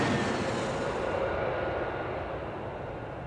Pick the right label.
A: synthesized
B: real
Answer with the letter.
B